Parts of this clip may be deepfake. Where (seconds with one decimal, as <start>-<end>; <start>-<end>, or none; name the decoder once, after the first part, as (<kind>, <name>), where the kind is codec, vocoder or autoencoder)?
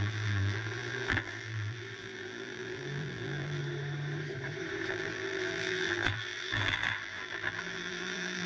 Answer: 0.0-3.6 (vocoder, BigVGAN v2); 4.9-8.5